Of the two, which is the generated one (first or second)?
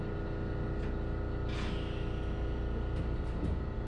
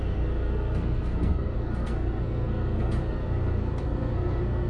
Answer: second